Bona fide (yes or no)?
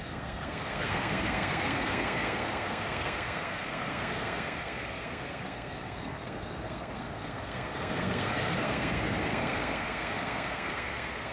no